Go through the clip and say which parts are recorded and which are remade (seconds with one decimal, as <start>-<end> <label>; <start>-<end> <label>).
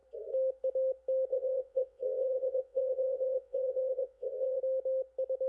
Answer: 0.0-1.3 recorded; 1.3-4.6 remade; 4.6-5.5 recorded